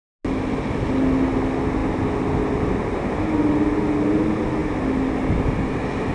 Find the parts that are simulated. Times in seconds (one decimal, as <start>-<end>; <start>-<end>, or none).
none